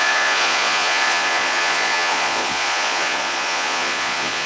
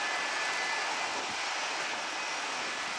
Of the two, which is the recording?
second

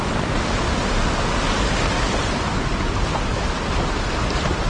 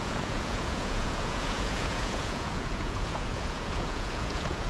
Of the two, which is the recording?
first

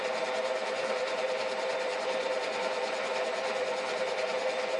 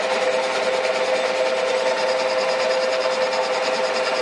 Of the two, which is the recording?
second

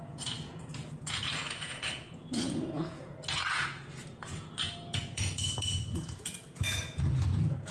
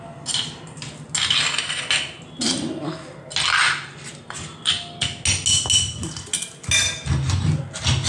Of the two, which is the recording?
second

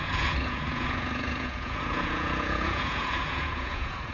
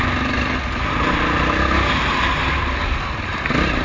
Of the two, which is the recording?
second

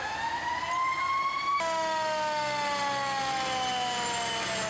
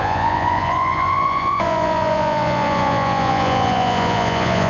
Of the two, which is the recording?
first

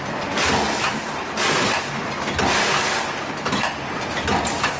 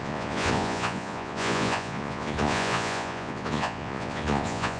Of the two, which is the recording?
first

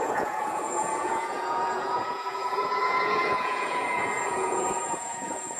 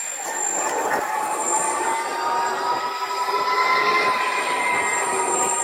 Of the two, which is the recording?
second